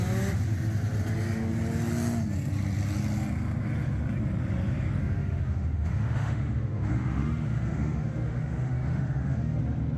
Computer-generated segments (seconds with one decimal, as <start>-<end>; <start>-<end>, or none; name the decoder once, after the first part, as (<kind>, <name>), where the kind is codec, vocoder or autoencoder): 5.0-9.6 (autoencoder, DAC-VAE)